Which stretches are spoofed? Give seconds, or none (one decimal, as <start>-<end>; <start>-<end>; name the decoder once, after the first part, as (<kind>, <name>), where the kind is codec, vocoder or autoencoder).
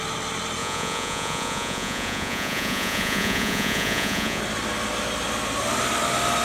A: 0.6-4.4 (vocoder, Vocos)